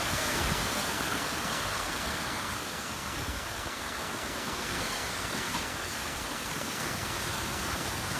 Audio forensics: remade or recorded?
remade